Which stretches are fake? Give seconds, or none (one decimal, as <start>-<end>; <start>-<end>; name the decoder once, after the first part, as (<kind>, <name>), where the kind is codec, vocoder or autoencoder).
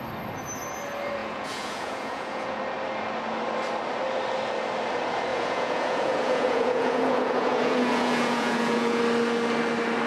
1.2-2.6 (vocoder, Vocos); 5.3-9.0